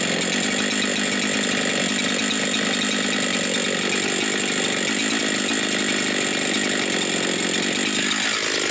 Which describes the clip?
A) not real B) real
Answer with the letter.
B